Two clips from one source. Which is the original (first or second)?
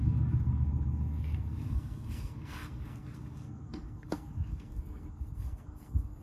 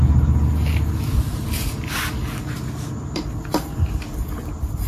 second